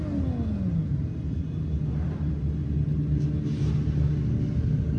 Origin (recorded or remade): recorded